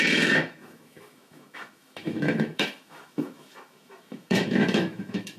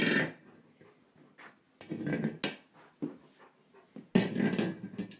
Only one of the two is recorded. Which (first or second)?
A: second